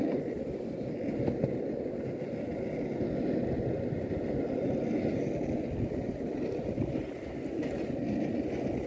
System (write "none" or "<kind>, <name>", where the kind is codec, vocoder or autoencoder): none